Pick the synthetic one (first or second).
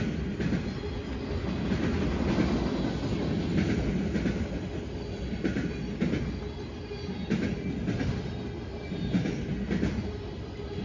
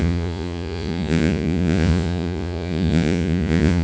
second